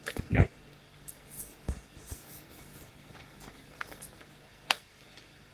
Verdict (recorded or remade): remade